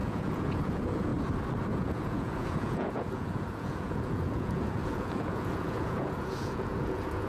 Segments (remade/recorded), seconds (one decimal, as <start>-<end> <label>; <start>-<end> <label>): 0.0-1.1 remade; 1.1-1.7 recorded; 1.7-7.3 remade